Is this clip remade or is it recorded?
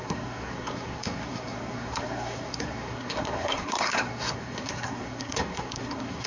remade